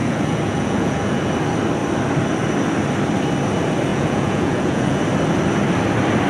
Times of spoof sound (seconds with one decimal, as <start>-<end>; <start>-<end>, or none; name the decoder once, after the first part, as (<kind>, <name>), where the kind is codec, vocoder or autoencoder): 0.0-1.3 (vocoder, Vocos); 3.9-5.0